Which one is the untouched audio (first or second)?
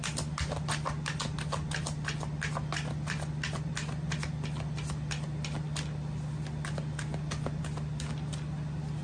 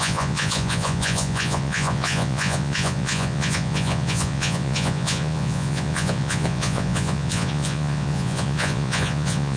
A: first